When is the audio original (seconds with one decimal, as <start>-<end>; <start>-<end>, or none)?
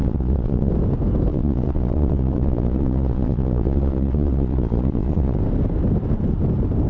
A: 0.7-1.3; 5.4-6.9